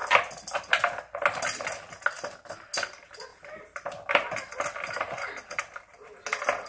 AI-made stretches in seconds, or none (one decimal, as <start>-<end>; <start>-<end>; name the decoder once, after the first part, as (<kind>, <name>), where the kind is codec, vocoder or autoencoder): 3.3-5.6 (vocoder, BigVGAN v2)